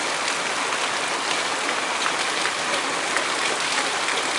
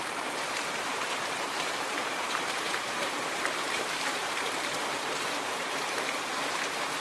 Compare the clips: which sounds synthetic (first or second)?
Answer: second